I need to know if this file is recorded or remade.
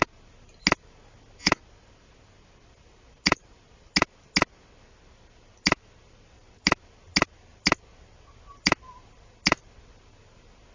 recorded